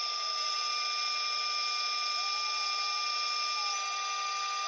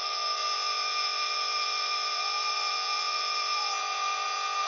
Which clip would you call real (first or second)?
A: first